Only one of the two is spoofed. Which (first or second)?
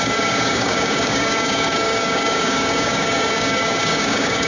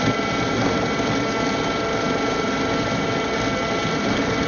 first